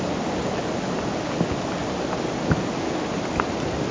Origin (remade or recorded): recorded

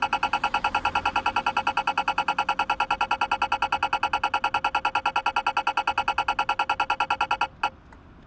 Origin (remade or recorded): recorded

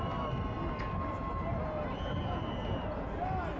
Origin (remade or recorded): recorded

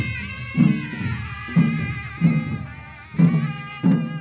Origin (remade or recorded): recorded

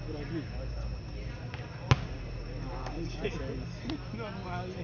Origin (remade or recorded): recorded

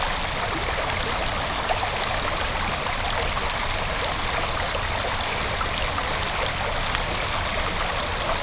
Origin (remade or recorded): recorded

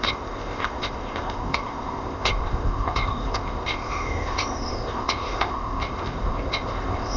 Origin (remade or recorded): remade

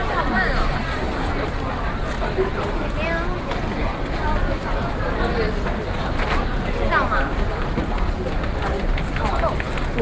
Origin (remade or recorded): recorded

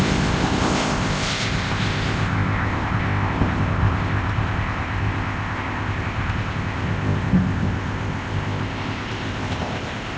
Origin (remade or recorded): remade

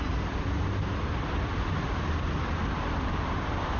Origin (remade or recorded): recorded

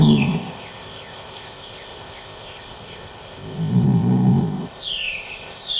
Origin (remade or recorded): remade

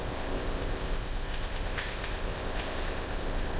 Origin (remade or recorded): remade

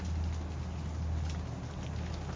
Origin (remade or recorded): recorded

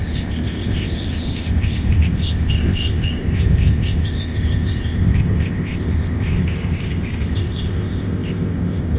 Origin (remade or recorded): remade